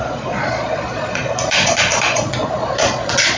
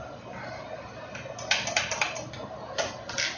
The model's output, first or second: first